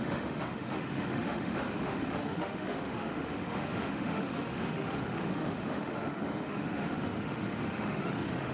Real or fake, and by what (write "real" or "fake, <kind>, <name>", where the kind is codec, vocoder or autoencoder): fake, autoencoder, DAC-VAE